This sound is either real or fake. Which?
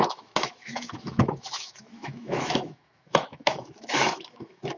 fake